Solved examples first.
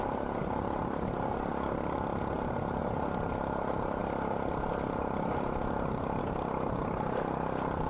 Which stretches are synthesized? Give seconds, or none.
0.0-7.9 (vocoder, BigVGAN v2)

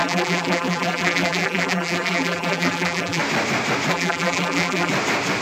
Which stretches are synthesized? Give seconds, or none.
0.0-3.2 (vocoder, BigVGAN v2); 3.9-4.9

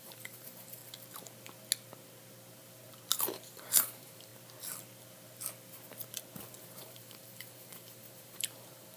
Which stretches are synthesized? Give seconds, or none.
0.0-0.8 (vocoder, BigVGAN v2); 3.3-4.3; 6.6-9.0

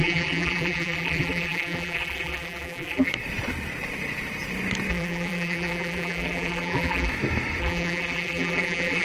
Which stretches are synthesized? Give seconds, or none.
0.0-3.1 (vocoder, BigVGAN v2); 4.9-7.1; 7.6-9.0

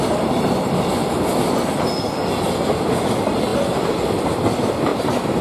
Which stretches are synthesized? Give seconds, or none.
none

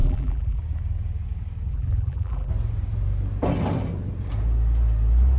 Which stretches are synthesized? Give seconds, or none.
0.0-0.6 (vocoder, BigVGAN v2); 1.7-2.5

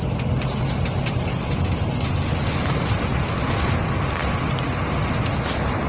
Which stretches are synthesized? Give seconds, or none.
none